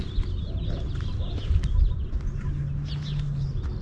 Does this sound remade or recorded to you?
recorded